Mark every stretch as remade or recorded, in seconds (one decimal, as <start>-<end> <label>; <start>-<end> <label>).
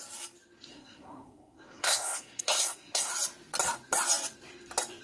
0.0-0.7 recorded; 0.7-3.1 remade; 3.1-5.0 recorded